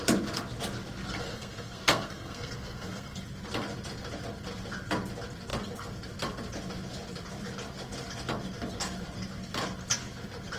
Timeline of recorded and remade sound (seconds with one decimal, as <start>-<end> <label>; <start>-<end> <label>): 0.0-1.2 recorded; 1.2-3.2 remade; 3.2-10.6 recorded